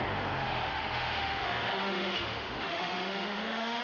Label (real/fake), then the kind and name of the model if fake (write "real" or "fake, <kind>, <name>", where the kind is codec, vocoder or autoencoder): fake, autoencoder, DAC-VAE